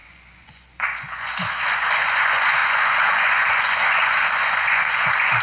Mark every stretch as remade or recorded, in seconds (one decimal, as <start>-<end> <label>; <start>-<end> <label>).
0.0-5.4 remade